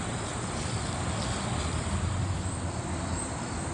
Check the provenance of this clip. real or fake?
real